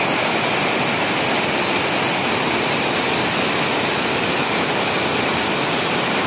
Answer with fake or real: real